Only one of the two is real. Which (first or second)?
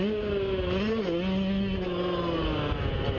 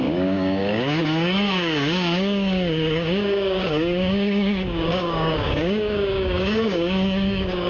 first